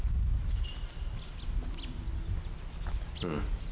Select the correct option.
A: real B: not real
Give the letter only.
A